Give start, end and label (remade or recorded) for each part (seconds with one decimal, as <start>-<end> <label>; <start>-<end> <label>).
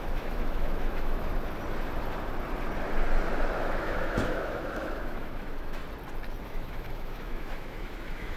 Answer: 0.0-1.3 remade; 1.3-3.6 recorded; 3.6-5.8 remade; 5.8-6.4 recorded; 6.4-8.4 remade